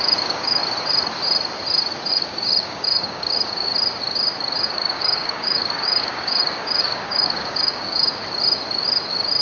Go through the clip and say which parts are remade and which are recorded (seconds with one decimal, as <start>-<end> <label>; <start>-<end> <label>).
0.0-0.6 remade; 0.6-2.1 recorded; 2.1-3.7 remade; 3.7-4.6 recorded; 4.6-8.2 remade; 8.2-9.4 recorded